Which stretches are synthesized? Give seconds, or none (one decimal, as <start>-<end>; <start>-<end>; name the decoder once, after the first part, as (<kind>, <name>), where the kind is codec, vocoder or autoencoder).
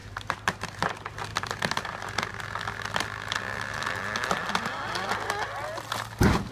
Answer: 0.0-0.9 (vocoder, BigVGAN v2); 1.3-2.3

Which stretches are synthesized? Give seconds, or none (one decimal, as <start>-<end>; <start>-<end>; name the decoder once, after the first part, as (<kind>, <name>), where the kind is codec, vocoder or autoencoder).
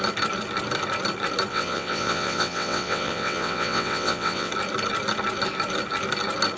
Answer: 1.5-4.5 (vocoder, WaveNeXt)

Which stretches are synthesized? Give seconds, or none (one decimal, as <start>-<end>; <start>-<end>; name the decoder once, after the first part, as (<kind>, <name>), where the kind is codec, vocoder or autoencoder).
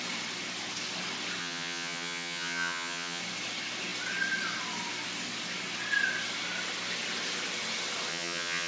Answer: 1.4-3.2 (vocoder, HiFi-GAN); 8.1-8.7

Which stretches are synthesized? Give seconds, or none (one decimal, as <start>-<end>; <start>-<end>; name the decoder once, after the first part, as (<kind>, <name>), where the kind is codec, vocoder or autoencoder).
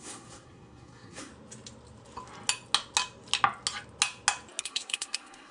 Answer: 0.0-1.3 (codec, SNAC); 4.6-5.5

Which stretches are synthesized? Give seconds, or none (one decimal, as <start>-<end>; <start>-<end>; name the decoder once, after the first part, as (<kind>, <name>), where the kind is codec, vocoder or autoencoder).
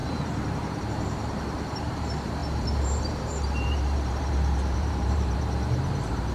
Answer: 0.0-6.3 (vocoder, BigVGAN v2)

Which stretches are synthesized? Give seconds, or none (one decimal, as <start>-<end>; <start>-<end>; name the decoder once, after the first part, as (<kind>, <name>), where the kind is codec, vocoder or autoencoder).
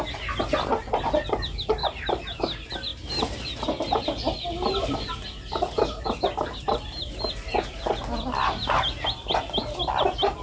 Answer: 1.8-2.4 (vocoder, BigVGAN v2)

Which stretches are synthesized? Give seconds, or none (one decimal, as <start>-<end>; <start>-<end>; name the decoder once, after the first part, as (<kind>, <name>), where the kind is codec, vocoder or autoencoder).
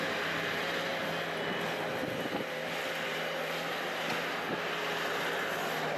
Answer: none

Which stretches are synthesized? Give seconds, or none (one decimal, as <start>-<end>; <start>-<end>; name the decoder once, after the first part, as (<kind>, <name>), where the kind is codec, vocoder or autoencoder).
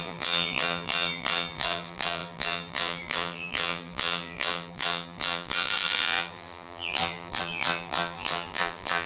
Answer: 0.0-9.1 (vocoder, BigVGAN v2)